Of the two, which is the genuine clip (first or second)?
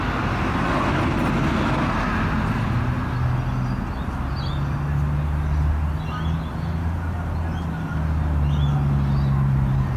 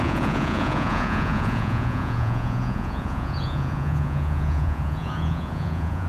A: first